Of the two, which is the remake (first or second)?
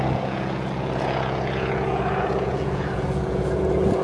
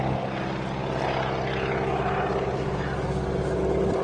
first